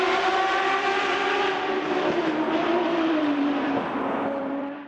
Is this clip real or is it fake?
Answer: fake